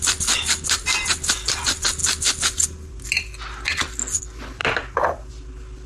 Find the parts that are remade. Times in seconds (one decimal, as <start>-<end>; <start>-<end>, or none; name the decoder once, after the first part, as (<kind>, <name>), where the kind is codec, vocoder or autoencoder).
none